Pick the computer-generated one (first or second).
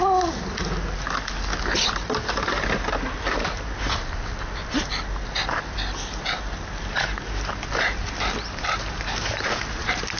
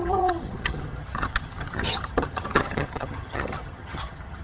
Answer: second